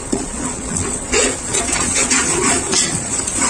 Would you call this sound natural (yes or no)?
no